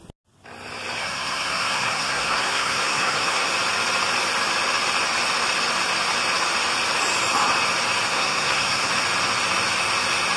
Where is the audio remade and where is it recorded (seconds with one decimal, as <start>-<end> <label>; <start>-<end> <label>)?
0.0-1.0 recorded; 1.0-3.5 remade; 3.5-8.1 recorded; 8.1-8.9 remade; 8.9-10.4 recorded